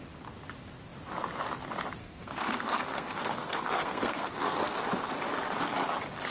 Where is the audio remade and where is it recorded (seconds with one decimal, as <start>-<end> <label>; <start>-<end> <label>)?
0.0-2.0 recorded; 2.0-4.8 remade; 4.8-6.3 recorded